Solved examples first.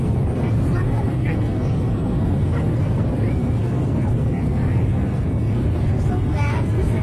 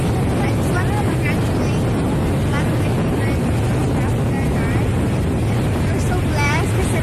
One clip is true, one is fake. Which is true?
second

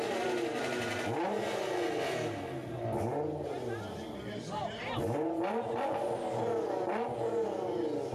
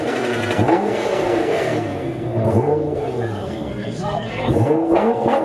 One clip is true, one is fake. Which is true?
first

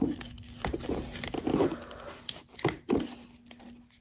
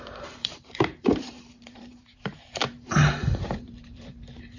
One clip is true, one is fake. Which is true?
first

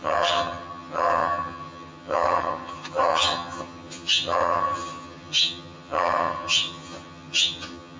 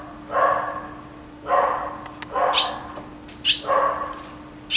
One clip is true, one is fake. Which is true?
second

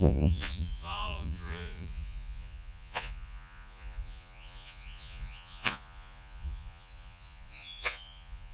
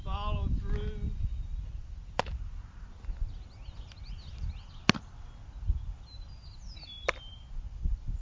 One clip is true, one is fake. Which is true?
second